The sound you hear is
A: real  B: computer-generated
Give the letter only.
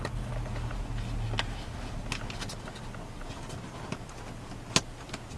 A